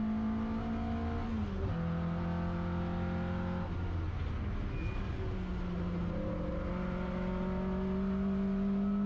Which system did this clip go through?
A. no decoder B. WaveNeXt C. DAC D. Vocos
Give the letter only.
A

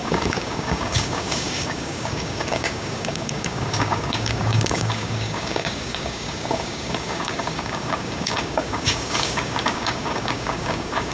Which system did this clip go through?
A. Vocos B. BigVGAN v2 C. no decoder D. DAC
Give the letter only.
D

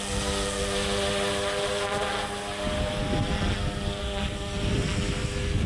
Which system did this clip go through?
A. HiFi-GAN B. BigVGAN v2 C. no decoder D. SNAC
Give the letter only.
C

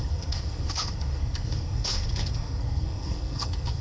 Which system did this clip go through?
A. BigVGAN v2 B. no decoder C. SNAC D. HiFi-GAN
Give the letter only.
C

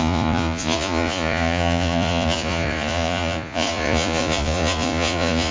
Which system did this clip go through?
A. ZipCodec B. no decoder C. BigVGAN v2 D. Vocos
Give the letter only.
D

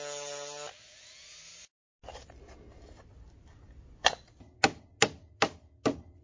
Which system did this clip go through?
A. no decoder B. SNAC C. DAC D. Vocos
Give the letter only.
A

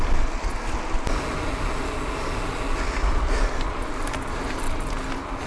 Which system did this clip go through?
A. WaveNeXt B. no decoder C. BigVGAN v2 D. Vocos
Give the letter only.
B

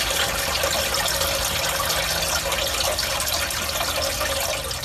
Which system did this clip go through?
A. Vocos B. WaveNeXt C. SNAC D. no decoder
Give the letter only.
D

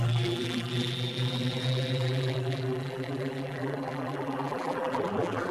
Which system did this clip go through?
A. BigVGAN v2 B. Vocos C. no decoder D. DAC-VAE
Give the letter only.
A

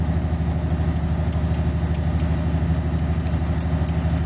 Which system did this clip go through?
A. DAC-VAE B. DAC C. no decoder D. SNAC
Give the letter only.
C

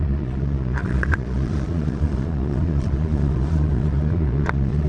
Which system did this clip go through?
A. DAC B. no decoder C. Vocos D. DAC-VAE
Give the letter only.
C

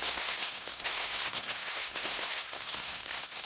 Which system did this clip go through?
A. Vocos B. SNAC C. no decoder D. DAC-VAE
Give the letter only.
B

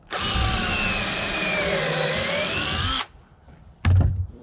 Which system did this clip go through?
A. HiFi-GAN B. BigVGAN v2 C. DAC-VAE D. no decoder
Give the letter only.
D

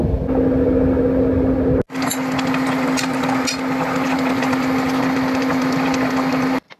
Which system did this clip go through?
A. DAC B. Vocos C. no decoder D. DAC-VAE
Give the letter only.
C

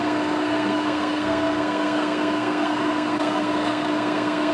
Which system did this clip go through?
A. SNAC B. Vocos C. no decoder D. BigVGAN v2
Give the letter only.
A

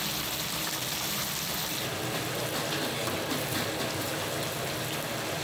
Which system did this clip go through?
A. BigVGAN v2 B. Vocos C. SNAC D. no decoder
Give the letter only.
D